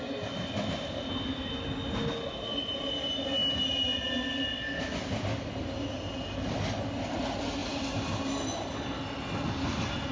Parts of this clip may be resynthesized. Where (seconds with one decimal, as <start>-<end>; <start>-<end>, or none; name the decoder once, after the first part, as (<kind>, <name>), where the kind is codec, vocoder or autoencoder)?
none